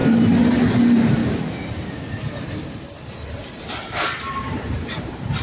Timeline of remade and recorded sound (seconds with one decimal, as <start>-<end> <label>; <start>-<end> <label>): 0.0-0.7 recorded; 0.7-1.2 remade; 1.2-4.4 recorded; 4.4-5.4 remade